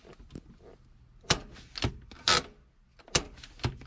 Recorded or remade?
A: recorded